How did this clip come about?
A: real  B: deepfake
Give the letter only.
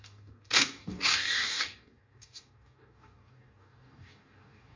B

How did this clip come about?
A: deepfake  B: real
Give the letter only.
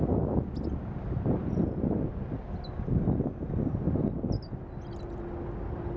B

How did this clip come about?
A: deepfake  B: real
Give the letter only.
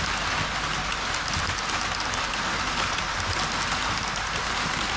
B